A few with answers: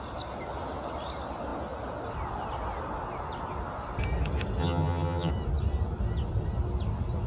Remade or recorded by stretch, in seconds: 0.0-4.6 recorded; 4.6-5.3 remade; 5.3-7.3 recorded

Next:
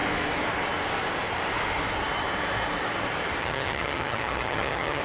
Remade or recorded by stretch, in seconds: 0.0-3.4 recorded; 3.4-5.0 remade

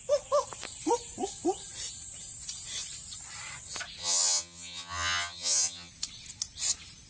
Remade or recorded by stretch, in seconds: 0.0-4.0 recorded; 4.0-5.9 remade; 5.9-7.1 recorded

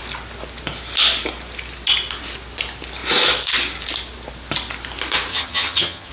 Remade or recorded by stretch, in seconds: 0.0-5.3 recorded; 5.3-6.1 remade

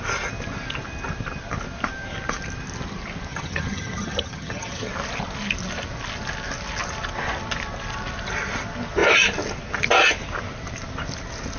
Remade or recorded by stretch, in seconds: 0.0-3.3 recorded; 3.3-4.9 remade; 4.9-11.6 recorded